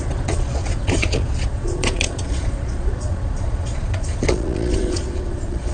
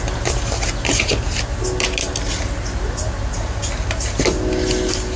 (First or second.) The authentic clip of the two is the second